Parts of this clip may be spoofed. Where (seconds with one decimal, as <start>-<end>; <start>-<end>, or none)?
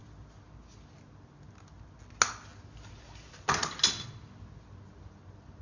none